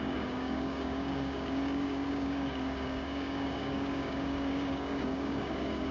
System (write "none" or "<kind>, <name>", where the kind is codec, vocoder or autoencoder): codec, DAC